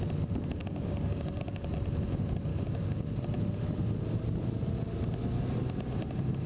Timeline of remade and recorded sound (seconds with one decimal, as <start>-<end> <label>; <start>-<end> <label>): 0.0-0.6 recorded; 0.6-1.7 remade; 1.7-2.5 recorded; 2.5-3.2 remade; 3.2-6.5 recorded

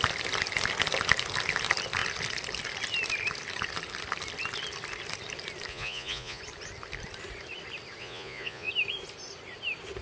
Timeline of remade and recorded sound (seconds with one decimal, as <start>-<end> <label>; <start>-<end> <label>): 0.0-5.7 recorded; 5.7-6.4 remade; 6.4-8.0 recorded; 8.0-8.7 remade; 8.7-10.0 recorded

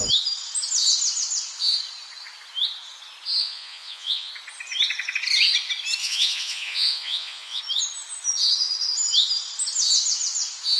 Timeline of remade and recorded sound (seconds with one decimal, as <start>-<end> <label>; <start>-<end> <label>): 0.0-3.4 recorded; 3.4-4.3 remade; 4.3-6.0 recorded; 6.0-7.6 remade; 7.6-10.8 recorded